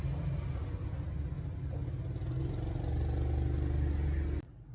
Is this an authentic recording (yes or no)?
yes